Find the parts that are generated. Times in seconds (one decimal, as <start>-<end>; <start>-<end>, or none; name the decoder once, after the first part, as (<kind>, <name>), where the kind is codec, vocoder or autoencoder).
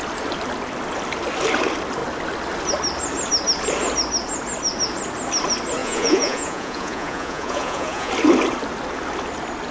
5.8-8.1 (vocoder, Vocos)